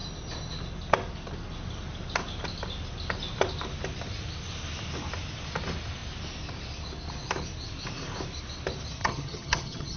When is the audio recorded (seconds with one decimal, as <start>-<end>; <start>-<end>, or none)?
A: 0.0-9.0